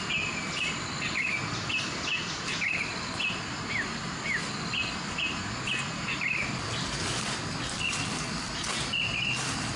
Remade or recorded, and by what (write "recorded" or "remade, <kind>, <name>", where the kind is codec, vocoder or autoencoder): recorded